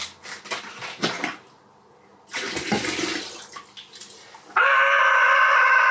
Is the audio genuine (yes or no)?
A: yes